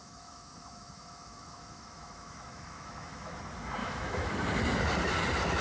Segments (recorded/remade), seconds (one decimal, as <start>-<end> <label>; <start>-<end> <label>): 0.0-3.4 remade; 3.4-3.8 recorded; 3.8-4.3 remade; 4.3-5.6 recorded